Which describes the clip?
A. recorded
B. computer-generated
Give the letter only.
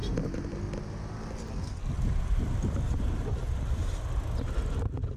A